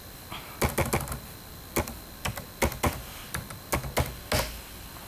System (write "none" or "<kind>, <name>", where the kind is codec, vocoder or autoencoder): none